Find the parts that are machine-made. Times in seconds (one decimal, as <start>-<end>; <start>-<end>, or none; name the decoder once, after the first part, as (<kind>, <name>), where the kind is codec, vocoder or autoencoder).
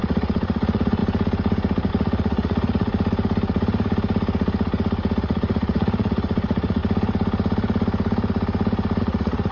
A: 0.0-1.0 (vocoder, Vocos); 1.9-2.9; 5.2-6.8; 9.0-9.5